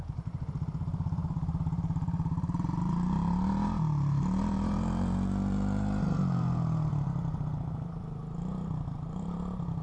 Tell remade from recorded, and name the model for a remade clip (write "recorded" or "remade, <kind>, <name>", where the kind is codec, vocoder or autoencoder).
remade, vocoder, BigVGAN v2